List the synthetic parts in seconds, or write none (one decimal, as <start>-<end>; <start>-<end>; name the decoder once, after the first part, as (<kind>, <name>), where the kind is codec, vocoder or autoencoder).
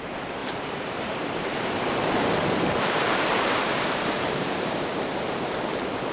0.4-2.0 (vocoder, BigVGAN v2); 2.4-6.1